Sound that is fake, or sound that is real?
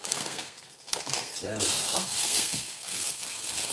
fake